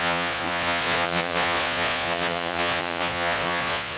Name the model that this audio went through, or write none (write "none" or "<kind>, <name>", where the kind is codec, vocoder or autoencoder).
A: vocoder, Vocos